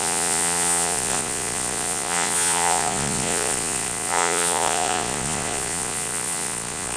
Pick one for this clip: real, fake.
fake